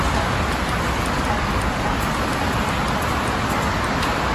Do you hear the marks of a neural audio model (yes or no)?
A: no